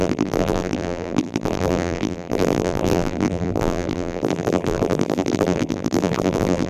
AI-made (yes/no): yes